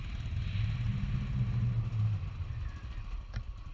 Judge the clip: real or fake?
real